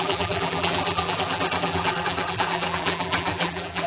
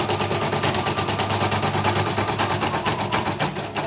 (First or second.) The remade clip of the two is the first